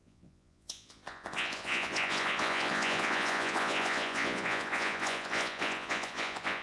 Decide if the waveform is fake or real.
fake